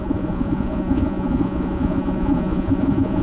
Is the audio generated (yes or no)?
yes